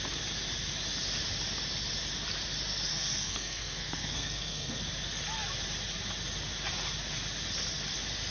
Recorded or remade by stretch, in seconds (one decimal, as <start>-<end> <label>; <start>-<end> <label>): 0.0-2.9 recorded; 2.9-4.8 remade; 4.8-8.3 recorded